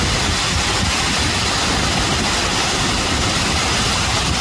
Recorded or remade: recorded